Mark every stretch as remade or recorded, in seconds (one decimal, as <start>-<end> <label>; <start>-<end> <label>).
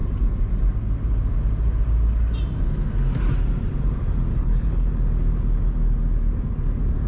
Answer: 0.0-4.3 recorded; 4.3-4.9 remade; 4.9-7.1 recorded